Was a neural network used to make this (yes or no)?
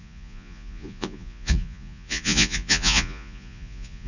yes